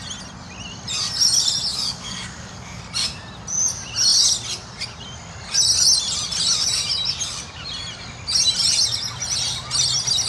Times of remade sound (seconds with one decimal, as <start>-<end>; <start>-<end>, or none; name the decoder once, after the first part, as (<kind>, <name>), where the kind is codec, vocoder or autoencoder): 1.7-2.8 (codec, DAC)